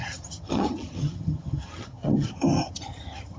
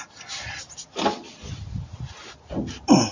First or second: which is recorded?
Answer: second